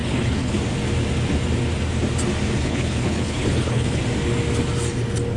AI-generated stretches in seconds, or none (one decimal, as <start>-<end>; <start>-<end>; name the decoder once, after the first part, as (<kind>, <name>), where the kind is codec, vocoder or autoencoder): 0.0-0.6 (codec, HILCodec); 2.6-4.0